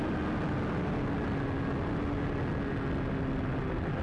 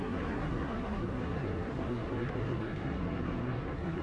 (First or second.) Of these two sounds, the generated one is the second